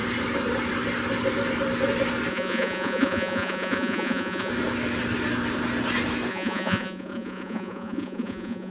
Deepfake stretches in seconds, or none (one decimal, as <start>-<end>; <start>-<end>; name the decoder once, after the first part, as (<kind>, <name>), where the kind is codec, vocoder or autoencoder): 2.3-4.5 (vocoder, Vocos); 6.3-8.7